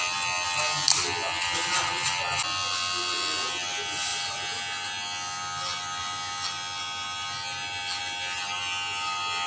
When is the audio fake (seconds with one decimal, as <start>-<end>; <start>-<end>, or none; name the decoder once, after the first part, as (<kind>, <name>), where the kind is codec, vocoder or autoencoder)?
none